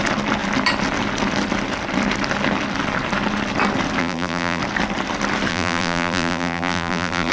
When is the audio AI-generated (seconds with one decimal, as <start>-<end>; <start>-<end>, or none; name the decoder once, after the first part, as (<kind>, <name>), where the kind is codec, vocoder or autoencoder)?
4.0-4.6 (vocoder, BigVGAN v2); 5.5-7.3